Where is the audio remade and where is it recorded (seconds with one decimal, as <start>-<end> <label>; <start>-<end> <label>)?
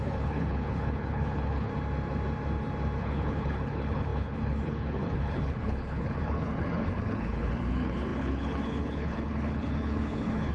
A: 0.0-1.7 remade; 1.7-3.0 recorded; 3.0-10.5 remade